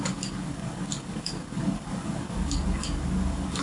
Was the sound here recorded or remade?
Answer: remade